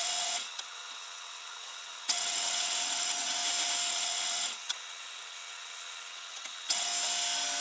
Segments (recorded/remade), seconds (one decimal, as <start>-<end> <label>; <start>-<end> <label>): 0.0-3.4 remade; 3.4-3.9 recorded; 3.9-6.9 remade; 6.9-7.6 recorded

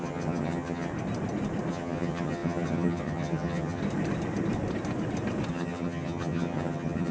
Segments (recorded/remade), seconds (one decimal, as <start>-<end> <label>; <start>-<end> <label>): 0.0-0.9 remade; 0.9-1.7 recorded; 1.7-3.8 remade; 3.8-5.5 recorded; 5.5-7.1 remade

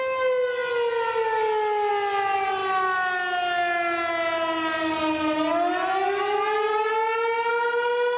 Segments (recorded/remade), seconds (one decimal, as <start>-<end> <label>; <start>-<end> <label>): 0.0-8.2 recorded

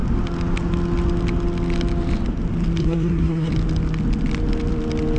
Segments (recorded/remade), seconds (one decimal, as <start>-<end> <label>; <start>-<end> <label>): 0.0-2.8 recorded; 2.8-3.5 remade; 3.5-5.2 recorded